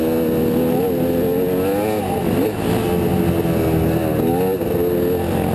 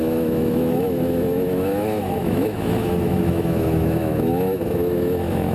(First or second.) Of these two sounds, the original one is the first